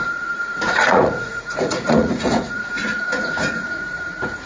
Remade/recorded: remade